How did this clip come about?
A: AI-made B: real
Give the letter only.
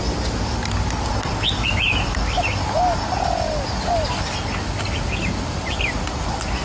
B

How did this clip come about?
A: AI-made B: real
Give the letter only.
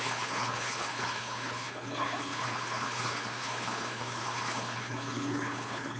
A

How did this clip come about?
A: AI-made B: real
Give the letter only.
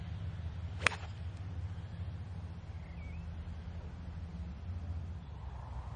B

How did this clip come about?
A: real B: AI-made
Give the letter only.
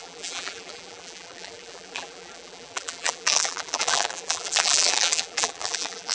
B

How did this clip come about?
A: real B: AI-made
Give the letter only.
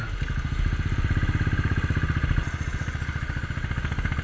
A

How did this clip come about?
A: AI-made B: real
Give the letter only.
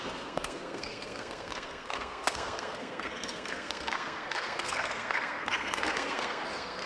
A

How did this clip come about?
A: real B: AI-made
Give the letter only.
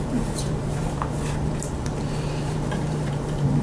B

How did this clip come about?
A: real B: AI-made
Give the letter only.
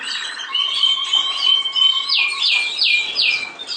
B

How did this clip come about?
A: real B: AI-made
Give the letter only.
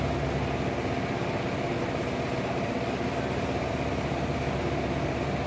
A